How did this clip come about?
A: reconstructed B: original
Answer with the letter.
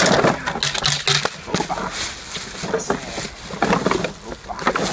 B